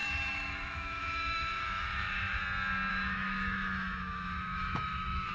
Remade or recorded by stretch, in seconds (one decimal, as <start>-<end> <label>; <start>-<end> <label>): 0.0-2.4 remade; 2.4-2.9 recorded; 2.9-5.3 remade